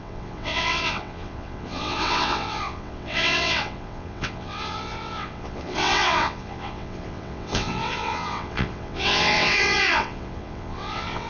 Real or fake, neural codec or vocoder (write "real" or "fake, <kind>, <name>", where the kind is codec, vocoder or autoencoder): fake, vocoder, WaveNeXt